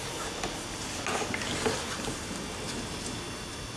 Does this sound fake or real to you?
real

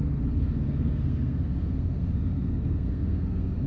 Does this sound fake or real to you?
fake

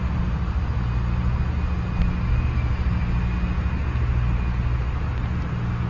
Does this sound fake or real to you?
real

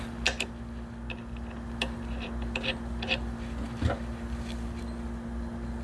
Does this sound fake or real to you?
real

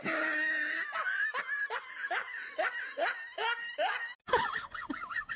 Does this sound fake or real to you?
real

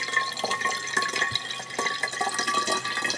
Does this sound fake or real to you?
real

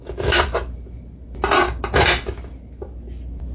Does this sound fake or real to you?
real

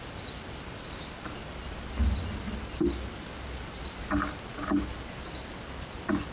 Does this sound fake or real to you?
real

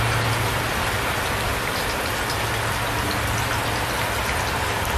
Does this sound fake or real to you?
real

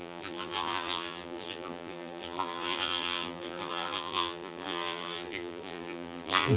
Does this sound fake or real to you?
fake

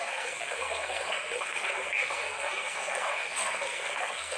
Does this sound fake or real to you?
fake